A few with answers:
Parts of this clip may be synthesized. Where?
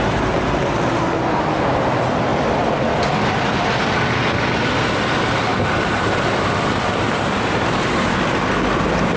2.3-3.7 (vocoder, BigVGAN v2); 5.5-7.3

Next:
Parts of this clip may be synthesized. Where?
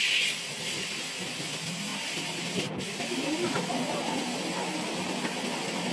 1.9-2.7 (vocoder, BigVGAN v2)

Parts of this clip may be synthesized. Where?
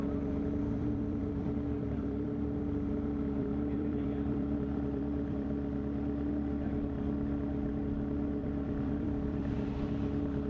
0.6-2.6 (vocoder, BigVGAN v2); 3.4-6.3; 8.4-9.7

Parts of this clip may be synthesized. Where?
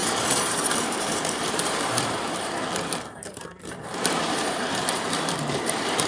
0.0-2.5 (vocoder, BigVGAN v2); 3.2-6.1